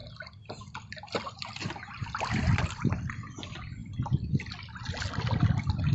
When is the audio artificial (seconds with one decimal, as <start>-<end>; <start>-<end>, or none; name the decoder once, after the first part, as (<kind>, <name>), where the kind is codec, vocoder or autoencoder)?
none

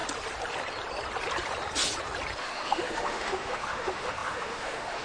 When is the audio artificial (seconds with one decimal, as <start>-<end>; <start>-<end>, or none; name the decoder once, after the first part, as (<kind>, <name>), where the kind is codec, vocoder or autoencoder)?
2.4-5.0 (autoencoder, DAC-VAE)

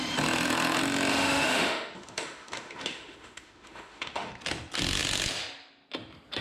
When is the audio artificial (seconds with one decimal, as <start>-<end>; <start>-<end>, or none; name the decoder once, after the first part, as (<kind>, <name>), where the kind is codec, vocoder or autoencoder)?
1.1-4.3 (autoencoder, DAC-VAE)

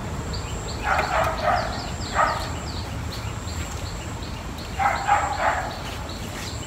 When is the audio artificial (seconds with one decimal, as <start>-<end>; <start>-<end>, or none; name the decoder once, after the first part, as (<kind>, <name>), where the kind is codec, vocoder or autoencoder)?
none

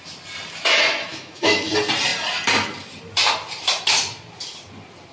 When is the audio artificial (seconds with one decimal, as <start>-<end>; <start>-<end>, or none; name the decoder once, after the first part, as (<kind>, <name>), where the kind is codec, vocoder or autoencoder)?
1.1-1.7 (autoencoder, DAC-VAE)

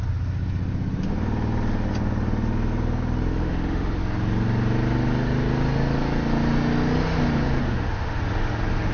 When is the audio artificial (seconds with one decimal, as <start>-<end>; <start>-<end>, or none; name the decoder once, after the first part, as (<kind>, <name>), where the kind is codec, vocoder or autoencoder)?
3.4-4.0 (autoencoder, DAC-VAE); 7.6-8.2

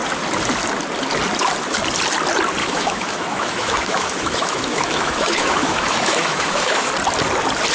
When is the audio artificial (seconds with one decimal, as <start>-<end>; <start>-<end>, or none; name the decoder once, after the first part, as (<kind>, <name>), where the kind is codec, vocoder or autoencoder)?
2.6-6.9 (autoencoder, DAC-VAE)